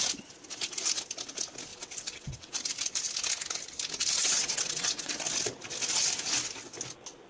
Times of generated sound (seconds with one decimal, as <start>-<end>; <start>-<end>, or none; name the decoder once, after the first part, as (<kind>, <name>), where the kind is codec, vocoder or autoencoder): 1.7-2.5 (vocoder, WaveNeXt); 4.2-5.1